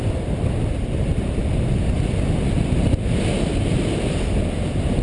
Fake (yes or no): no